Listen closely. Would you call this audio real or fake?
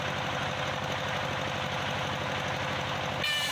real